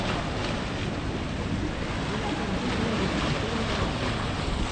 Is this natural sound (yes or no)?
yes